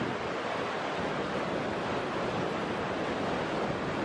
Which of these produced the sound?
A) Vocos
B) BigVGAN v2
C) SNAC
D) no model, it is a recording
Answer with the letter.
D